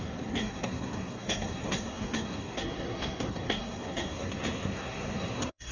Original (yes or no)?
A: no